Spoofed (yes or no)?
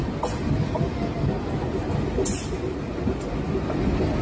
no